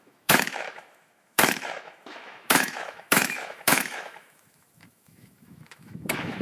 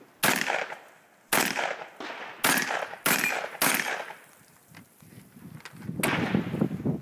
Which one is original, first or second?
second